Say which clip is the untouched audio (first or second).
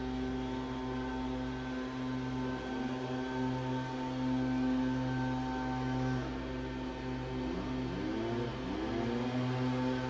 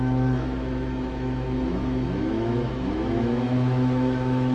first